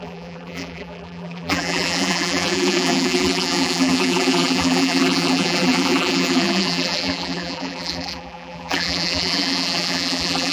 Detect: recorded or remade remade